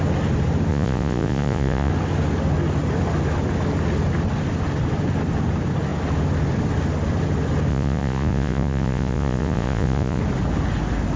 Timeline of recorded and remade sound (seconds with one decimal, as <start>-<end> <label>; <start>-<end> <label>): 0.0-0.7 recorded; 0.7-1.9 remade; 1.9-7.7 recorded; 7.7-10.2 remade; 10.2-11.2 recorded